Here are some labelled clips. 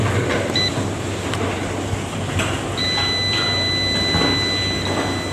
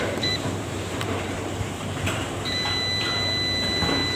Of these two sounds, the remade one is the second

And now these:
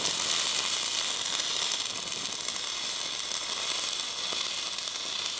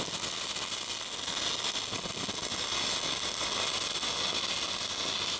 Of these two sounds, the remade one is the first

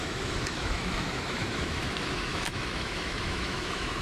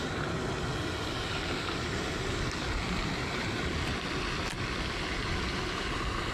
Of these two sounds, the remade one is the first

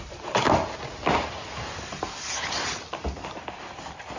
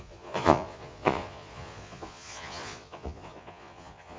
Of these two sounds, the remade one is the second